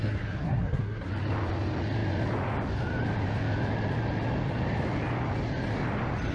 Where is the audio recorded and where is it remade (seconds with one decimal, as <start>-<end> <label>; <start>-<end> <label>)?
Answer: 0.0-1.1 remade; 1.1-6.3 recorded